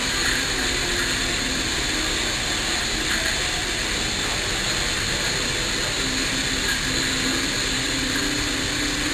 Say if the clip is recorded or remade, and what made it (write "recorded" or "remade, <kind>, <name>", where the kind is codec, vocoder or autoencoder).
recorded